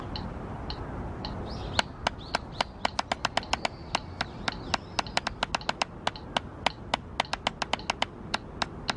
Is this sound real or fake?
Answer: real